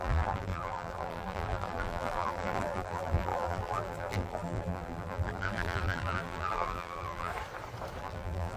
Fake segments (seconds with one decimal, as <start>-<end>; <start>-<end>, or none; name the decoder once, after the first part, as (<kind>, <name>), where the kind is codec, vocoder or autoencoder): 0.0-7.3 (vocoder, BigVGAN v2); 8.0-8.6